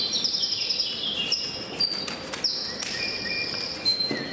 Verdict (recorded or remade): recorded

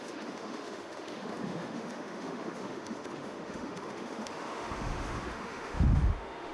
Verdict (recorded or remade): remade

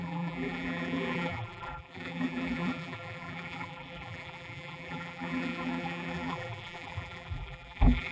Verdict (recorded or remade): remade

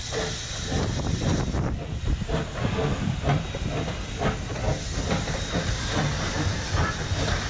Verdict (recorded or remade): recorded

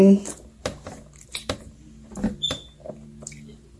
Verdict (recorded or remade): recorded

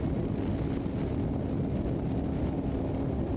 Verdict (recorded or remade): recorded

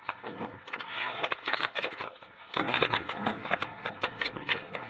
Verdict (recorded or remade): remade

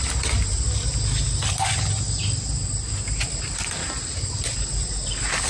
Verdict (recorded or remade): recorded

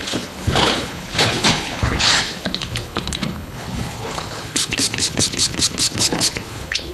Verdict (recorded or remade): remade